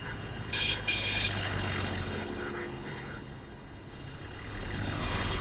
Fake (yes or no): yes